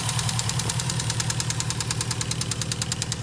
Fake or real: fake